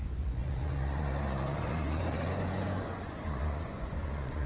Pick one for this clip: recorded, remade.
remade